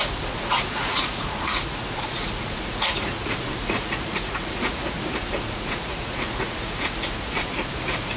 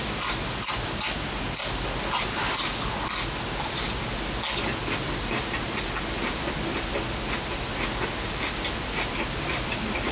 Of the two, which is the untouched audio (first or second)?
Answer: second